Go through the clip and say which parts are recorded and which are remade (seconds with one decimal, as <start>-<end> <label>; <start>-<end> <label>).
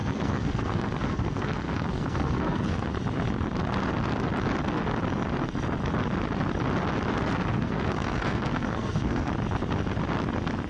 0.0-2.9 remade; 2.9-7.5 recorded; 7.5-9.3 remade; 9.3-10.7 recorded